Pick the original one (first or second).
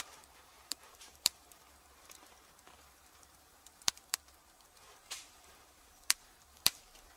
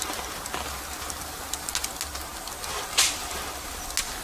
second